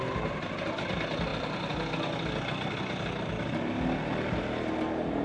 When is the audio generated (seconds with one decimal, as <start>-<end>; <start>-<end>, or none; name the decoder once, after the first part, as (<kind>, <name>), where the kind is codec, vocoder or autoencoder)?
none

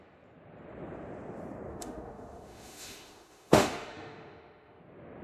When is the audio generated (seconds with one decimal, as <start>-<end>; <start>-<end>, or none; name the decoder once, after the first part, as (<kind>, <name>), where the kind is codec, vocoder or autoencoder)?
1.7-4.8 (autoencoder, DAC-VAE)

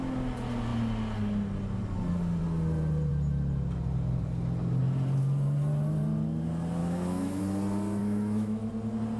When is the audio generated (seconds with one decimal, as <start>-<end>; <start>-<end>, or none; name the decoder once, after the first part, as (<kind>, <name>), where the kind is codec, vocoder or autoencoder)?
6.8-7.4 (autoencoder, DAC-VAE); 8.0-8.7